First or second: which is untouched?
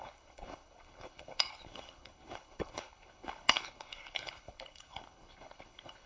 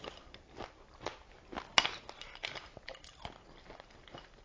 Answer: second